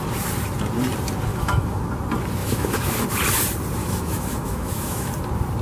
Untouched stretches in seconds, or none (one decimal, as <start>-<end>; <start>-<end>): 0.0-1.3; 1.8-2.4; 3.0-3.8; 5.1-5.6